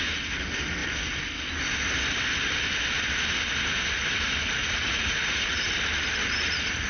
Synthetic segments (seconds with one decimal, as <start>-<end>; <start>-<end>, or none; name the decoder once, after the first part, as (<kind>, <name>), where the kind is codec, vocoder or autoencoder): 4.6-5.7 (vocoder, Vocos)